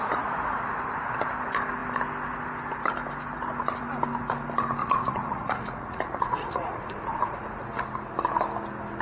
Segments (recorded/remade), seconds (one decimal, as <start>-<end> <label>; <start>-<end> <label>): 0.0-4.8 recorded; 4.8-7.4 remade; 7.4-9.0 recorded